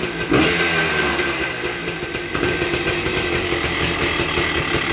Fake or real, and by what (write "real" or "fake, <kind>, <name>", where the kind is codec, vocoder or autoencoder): real